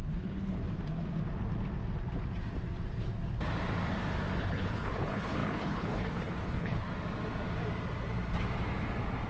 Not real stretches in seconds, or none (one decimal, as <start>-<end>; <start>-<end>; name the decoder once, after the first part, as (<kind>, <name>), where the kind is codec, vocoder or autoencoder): 0.0-0.6 (codec, HILCodec); 4.4-6.9